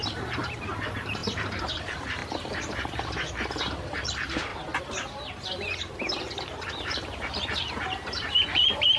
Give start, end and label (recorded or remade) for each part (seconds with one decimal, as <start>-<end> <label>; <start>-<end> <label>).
0.0-4.5 remade; 4.5-6.7 recorded; 6.7-9.0 remade